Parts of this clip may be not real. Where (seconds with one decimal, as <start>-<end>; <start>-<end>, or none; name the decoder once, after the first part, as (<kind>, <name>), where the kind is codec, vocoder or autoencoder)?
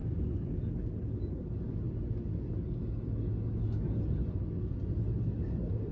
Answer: none